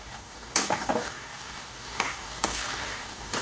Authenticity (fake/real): fake